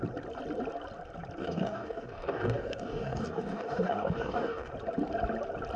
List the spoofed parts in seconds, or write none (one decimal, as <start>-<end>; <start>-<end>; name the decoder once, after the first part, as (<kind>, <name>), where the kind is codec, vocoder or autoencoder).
1.4-4.7 (codec, DAC)